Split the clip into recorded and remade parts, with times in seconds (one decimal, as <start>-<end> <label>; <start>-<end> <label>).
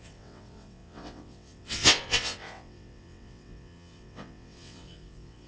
0.0-5.5 remade